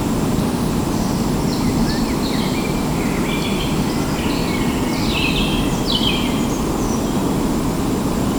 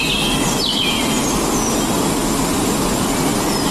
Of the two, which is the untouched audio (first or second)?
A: second